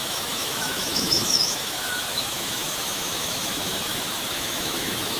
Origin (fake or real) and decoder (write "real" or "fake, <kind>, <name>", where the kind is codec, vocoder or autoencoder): fake, autoencoder, DAC-VAE